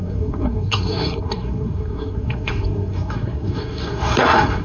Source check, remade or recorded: remade